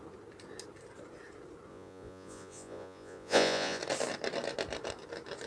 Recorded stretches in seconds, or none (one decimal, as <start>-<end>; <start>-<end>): 0.0-1.7; 3.8-5.5